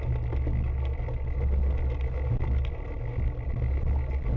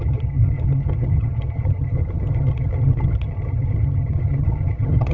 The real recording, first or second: first